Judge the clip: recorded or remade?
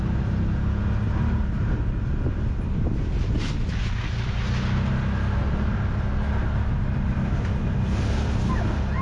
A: recorded